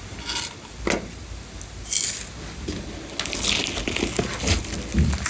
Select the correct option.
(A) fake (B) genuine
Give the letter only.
B